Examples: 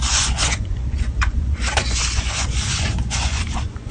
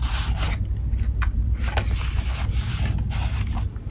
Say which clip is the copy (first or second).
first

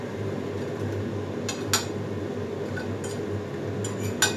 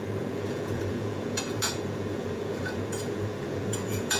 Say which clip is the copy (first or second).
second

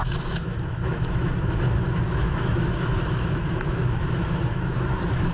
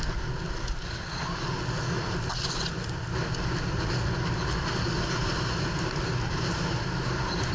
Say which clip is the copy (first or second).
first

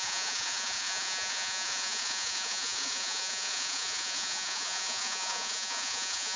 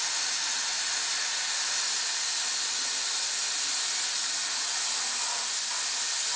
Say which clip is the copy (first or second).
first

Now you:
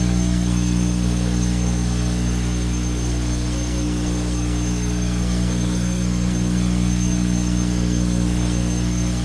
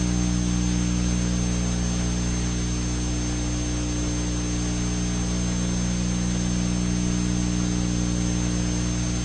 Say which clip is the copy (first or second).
first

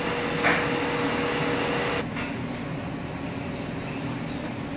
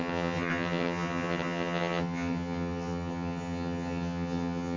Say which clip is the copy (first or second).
second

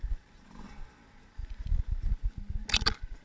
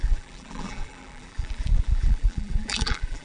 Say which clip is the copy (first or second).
second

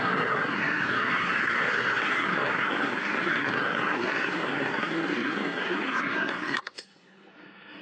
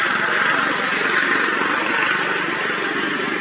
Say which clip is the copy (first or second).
first